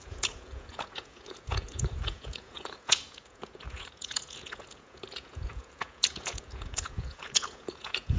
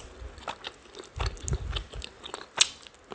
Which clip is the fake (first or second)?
first